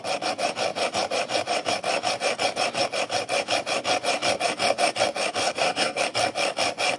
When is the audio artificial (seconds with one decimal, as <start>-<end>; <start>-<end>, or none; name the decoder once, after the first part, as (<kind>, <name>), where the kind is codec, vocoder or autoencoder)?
5.4-6.0 (codec, SNAC)